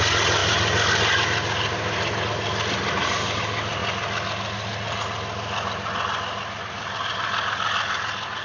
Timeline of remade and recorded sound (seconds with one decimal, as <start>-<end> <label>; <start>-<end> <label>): 0.0-8.4 recorded